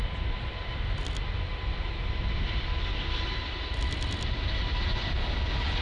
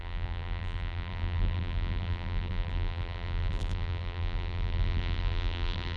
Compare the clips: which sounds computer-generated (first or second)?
second